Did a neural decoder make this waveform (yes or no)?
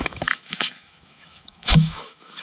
yes